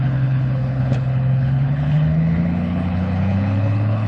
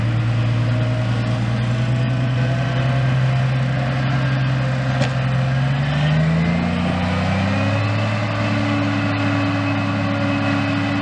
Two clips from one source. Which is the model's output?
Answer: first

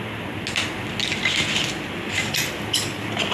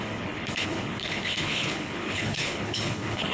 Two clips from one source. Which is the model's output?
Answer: second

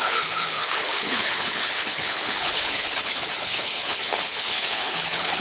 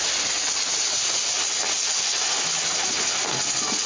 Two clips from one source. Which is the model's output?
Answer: first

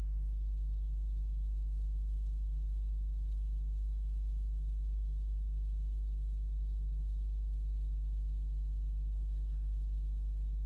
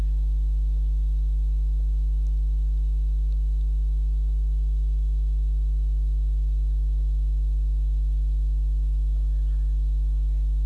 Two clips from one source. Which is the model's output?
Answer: first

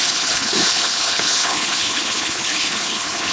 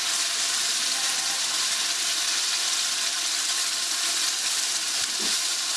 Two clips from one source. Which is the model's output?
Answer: first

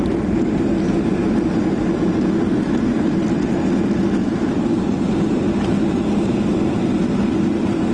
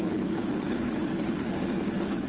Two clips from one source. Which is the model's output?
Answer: second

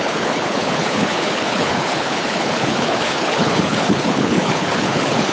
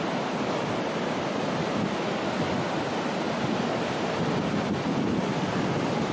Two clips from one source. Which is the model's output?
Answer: first